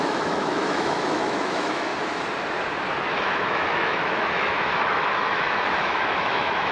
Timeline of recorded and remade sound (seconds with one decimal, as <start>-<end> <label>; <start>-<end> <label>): 0.0-1.9 remade; 1.9-3.1 recorded; 3.1-6.7 remade